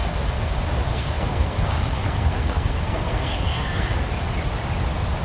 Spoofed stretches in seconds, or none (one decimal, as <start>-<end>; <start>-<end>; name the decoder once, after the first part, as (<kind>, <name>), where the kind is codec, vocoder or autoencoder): 0.0-0.5 (codec, SNAC); 0.9-4.0